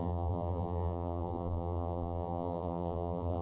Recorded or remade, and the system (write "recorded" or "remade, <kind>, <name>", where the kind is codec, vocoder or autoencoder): remade, vocoder, BigVGAN v2